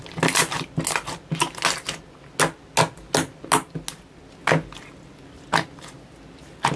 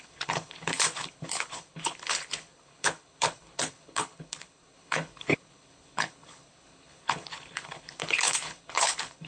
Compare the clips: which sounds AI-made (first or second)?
second